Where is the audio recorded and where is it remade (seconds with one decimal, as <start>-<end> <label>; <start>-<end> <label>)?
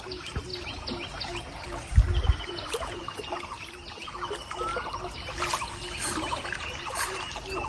0.0-7.7 recorded